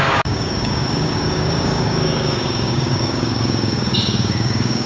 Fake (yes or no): yes